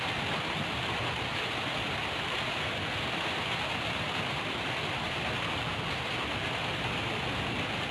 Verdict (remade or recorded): recorded